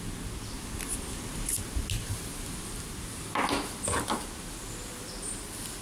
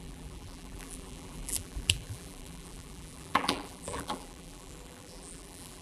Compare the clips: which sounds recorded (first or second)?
first